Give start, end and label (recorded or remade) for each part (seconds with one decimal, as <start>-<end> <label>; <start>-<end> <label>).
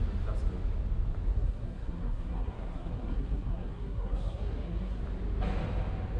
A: 0.0-1.3 recorded; 1.3-5.0 remade; 5.0-6.2 recorded